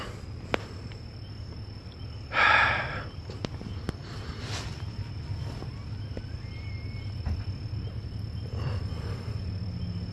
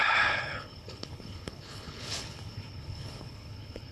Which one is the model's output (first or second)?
second